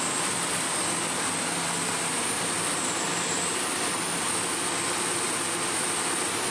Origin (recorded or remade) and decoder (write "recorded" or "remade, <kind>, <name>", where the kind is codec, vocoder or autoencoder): recorded